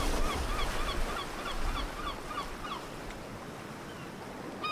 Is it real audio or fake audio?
real